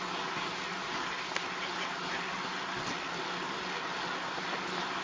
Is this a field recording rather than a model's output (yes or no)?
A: yes